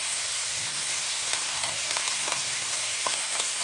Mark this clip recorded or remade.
remade